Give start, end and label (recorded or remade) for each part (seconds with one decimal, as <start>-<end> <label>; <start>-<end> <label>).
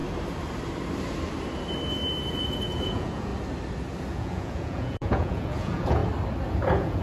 0.0-2.3 recorded; 2.3-3.3 remade; 3.3-4.1 recorded; 4.1-6.0 remade; 6.0-6.5 recorded; 6.5-7.0 remade